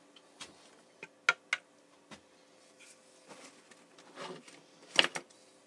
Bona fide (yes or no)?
yes